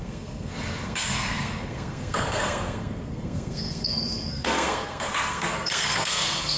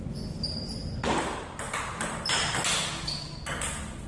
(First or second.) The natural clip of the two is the second